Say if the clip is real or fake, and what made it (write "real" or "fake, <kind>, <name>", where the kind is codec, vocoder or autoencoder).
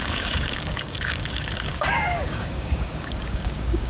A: fake, codec, DAC